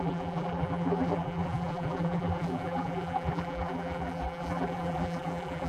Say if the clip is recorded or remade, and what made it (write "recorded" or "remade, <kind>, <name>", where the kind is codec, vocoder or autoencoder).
remade, vocoder, BigVGAN v2